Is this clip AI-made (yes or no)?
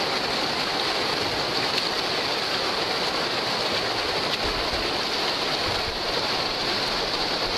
no